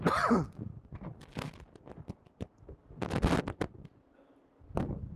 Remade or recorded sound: recorded